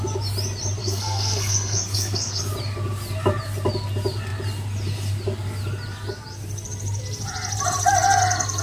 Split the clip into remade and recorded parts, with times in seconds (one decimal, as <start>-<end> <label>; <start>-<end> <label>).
0.0-0.8 recorded; 0.8-2.4 remade; 2.4-8.6 recorded